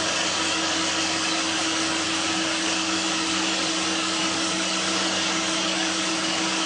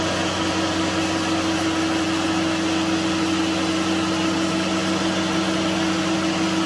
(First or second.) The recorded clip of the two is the second